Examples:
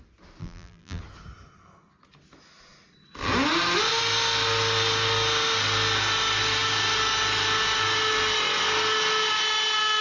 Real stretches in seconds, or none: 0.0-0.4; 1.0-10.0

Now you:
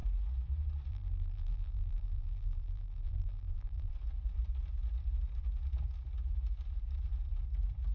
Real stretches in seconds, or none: 0.0-0.9; 3.9-7.9

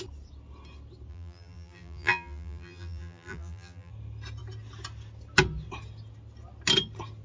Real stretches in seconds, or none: 0.0-1.1; 3.9-7.2

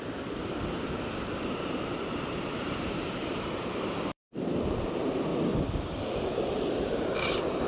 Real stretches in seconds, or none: 5.3-6.0